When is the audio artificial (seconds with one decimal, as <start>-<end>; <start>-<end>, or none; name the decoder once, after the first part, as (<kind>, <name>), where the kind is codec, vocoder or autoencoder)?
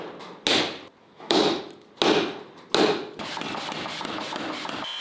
1.0-1.6 (autoencoder, DAC-VAE)